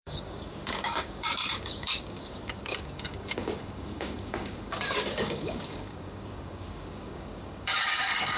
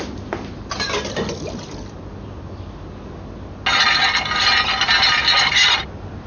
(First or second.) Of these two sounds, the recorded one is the second